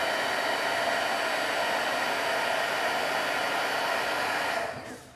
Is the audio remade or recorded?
recorded